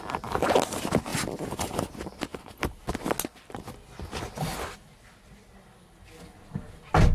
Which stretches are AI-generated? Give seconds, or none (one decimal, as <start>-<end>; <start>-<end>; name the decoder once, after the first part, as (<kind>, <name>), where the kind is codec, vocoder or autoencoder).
1.1-1.8 (vocoder, BigVGAN v2)